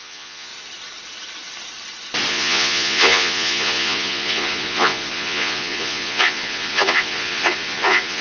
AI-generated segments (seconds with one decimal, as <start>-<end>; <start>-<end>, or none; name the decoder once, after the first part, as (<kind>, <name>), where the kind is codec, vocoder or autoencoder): 0.0-0.5 (vocoder, Vocos); 2.3-8.2